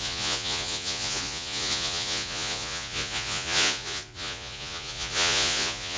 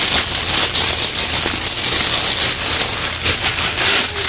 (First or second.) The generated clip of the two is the first